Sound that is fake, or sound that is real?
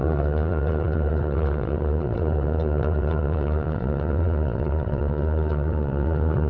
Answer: fake